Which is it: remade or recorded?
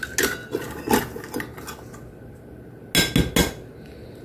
recorded